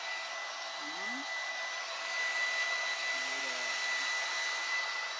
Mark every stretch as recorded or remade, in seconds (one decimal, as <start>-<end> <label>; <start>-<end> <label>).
0.0-5.2 recorded